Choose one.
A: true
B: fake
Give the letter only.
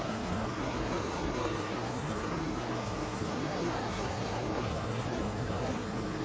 B